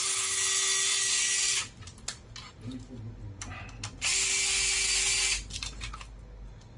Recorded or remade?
recorded